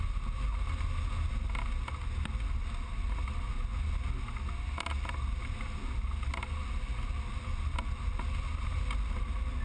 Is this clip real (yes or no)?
yes